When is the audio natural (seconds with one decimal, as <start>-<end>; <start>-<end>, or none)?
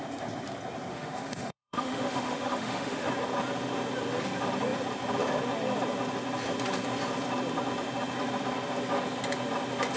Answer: 0.0-0.9; 3.1-10.0